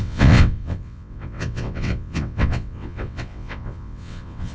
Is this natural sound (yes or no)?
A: no